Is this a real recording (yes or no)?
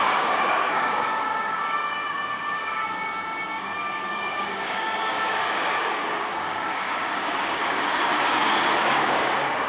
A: no